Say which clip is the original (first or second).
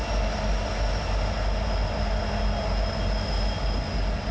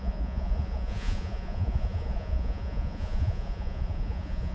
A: first